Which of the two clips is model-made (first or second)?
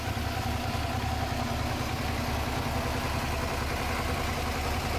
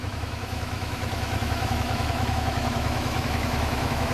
second